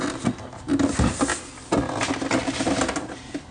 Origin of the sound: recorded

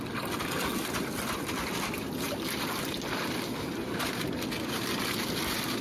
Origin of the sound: recorded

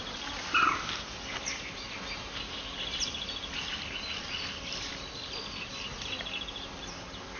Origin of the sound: recorded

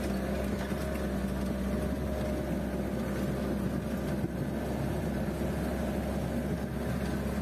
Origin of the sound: recorded